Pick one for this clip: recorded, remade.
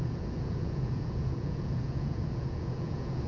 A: remade